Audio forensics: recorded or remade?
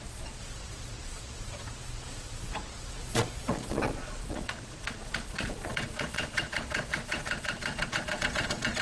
remade